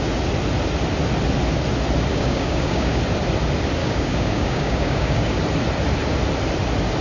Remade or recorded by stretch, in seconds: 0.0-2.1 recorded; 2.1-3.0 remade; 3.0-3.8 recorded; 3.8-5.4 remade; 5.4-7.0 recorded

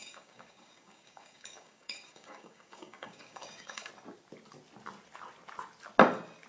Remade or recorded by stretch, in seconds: 0.0-3.9 remade; 3.9-6.5 recorded

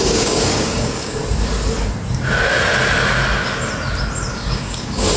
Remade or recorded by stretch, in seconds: 0.0-1.2 remade; 1.2-4.3 recorded; 4.3-5.2 remade

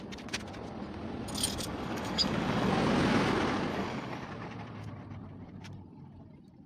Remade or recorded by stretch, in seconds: 0.0-1.4 recorded; 1.4-2.7 remade; 2.7-3.7 recorded; 3.7-4.3 remade; 4.3-6.7 recorded

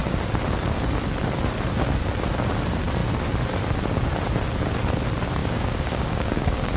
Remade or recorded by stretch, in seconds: 0.0-5.4 recorded; 5.4-6.8 remade